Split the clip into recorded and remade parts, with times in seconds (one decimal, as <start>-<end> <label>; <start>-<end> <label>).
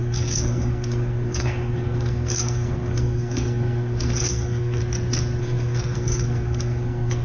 0.0-4.8 remade; 4.8-5.4 recorded; 5.4-7.2 remade